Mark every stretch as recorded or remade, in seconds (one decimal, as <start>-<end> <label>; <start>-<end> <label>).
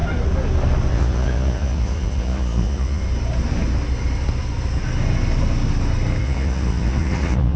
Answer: 0.0-0.9 recorded; 0.9-3.0 remade; 3.0-6.2 recorded; 6.2-7.6 remade